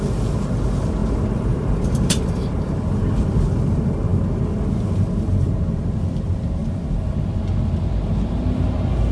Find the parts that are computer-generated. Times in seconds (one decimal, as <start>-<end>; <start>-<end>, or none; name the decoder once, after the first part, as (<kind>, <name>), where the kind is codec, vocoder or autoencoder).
1.0-2.9 (vocoder, BigVGAN v2)